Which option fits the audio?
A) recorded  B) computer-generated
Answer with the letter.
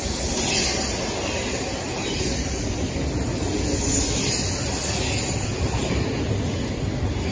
A